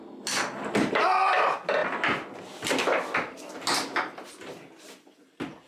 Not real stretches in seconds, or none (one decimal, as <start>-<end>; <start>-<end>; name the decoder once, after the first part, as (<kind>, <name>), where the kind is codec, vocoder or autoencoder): none